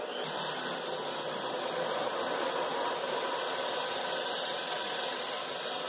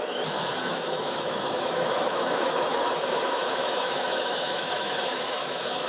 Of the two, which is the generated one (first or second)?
second